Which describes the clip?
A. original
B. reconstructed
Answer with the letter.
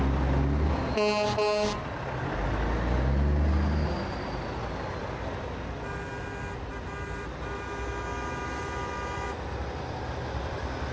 A